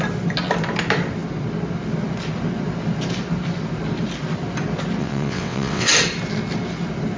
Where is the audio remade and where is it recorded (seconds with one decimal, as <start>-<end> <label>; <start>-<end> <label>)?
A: 0.0-5.0 recorded; 5.0-5.9 remade; 5.9-7.2 recorded